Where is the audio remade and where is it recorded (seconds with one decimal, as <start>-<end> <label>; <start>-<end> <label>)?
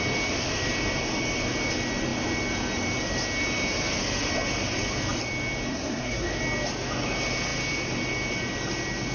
0.0-5.7 recorded; 5.7-6.4 remade; 6.4-9.1 recorded